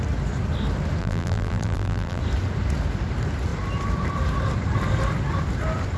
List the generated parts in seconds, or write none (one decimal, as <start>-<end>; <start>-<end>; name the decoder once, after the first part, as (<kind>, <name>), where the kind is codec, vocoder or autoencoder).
1.0-2.2 (vocoder, BigVGAN v2)